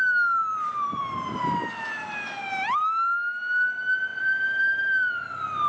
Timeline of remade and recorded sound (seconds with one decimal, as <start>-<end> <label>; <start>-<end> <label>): 0.0-0.4 recorded; 0.4-1.1 remade; 1.1-4.1 recorded; 4.1-5.1 remade; 5.1-5.7 recorded